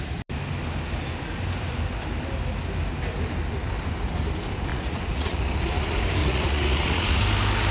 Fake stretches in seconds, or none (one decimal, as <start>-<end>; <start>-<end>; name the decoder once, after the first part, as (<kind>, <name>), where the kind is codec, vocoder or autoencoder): 4.7-5.4 (vocoder, Vocos); 6.2-7.2